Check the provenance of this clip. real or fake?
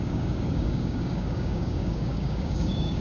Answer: fake